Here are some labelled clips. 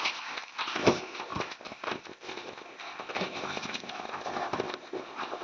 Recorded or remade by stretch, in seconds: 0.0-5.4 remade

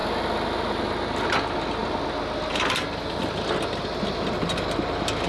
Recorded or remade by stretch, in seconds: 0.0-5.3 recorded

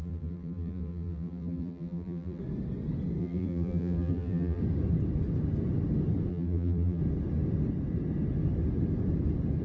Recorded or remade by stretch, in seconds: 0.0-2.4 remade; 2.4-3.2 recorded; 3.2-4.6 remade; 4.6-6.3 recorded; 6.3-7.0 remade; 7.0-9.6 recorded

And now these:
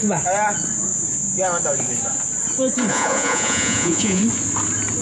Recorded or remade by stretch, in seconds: 0.0-2.9 recorded; 2.9-4.2 remade; 4.2-5.0 recorded

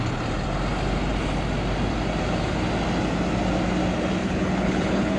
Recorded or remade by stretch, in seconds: 0.0-4.2 recorded; 4.2-5.2 remade

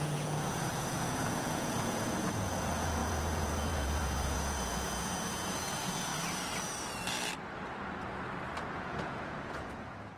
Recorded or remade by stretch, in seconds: 0.0-6.1 remade; 6.1-8.7 recorded; 8.7-10.2 remade

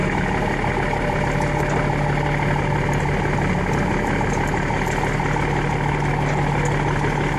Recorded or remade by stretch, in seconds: 0.0-7.4 recorded